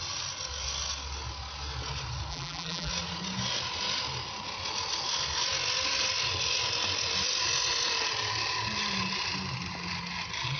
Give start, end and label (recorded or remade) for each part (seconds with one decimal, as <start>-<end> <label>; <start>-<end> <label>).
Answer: 0.0-2.3 recorded; 2.3-2.9 remade; 2.9-10.6 recorded